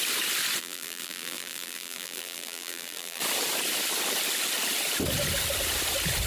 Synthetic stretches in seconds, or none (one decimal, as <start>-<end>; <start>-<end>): 0.6-3.2

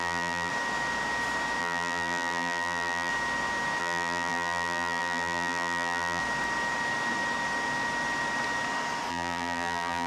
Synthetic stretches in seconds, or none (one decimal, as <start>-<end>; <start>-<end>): 0.0-0.5; 1.6-3.1; 3.8-6.2; 9.1-10.1

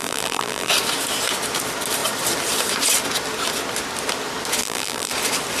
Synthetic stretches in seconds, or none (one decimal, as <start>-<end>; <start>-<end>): 0.0-0.7; 4.6-5.1